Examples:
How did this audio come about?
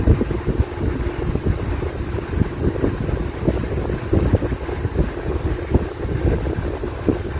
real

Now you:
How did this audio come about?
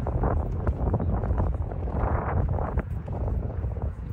fake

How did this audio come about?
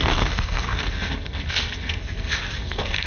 fake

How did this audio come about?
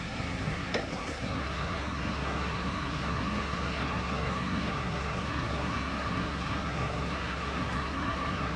fake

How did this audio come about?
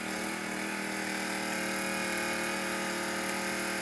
real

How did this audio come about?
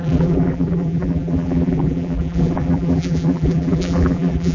fake